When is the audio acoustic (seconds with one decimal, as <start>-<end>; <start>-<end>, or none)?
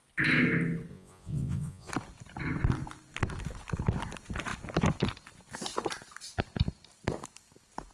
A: 0.0-0.9; 1.9-7.9